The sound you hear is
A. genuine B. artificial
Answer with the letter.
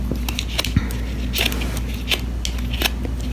A